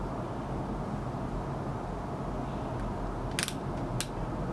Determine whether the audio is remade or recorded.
recorded